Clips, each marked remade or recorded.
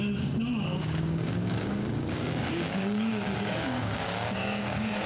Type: remade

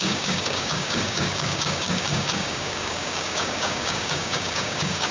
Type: remade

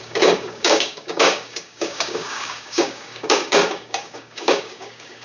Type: remade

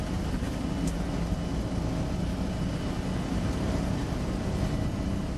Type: recorded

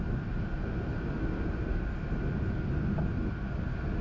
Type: recorded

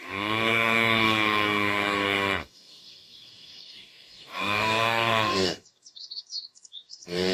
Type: remade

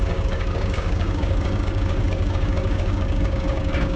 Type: remade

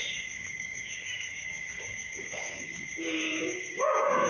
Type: remade